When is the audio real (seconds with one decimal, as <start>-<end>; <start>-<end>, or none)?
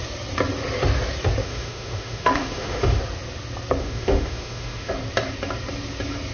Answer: 0.0-1.4; 3.0-3.8; 4.9-6.3